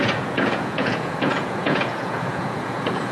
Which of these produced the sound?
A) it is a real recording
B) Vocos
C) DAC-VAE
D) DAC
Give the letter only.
B